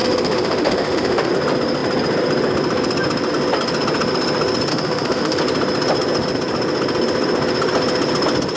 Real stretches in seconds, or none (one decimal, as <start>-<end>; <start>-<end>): 1.3-4.7; 5.4-8.6